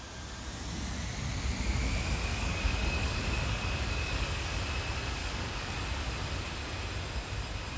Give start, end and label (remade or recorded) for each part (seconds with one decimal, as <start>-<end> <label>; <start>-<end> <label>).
0.0-2.3 recorded; 2.3-4.6 remade; 4.6-5.2 recorded; 5.2-5.8 remade; 5.8-7.8 recorded